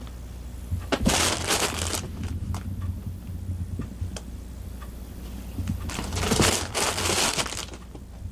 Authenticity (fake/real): real